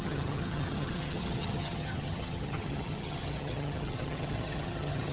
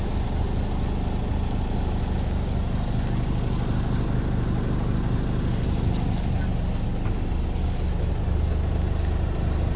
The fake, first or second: first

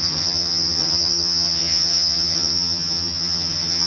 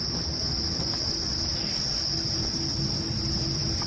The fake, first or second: first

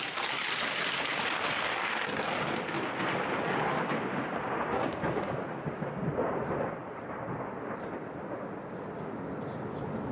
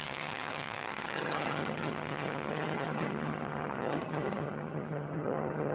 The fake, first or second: second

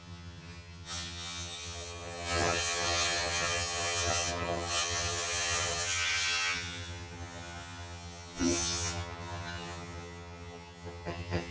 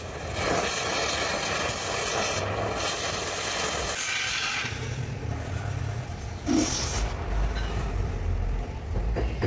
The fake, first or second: first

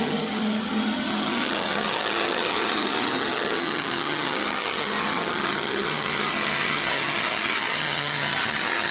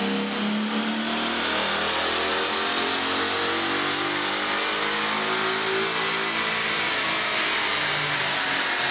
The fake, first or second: first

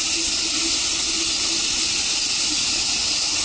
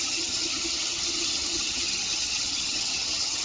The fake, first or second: second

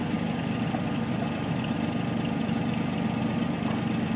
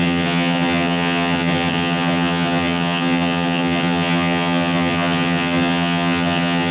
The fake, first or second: second